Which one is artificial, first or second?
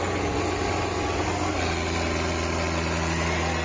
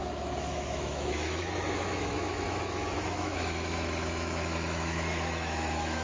second